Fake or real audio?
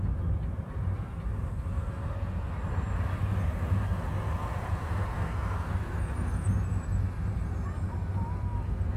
real